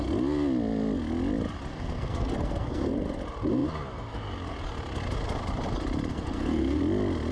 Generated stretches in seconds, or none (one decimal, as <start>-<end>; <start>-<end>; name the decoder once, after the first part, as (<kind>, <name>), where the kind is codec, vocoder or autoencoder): 1.7-3.2 (codec, SNAC); 6.1-6.8